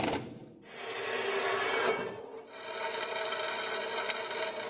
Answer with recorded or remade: recorded